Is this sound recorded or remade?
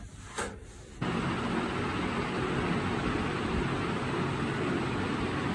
recorded